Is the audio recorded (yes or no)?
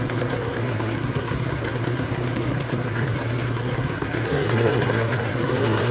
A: no